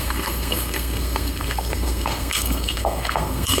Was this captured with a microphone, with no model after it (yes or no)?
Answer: no